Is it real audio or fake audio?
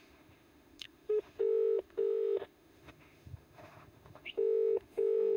fake